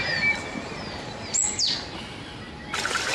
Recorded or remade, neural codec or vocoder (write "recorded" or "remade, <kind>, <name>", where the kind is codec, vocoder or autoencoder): recorded